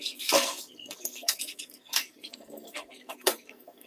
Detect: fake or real fake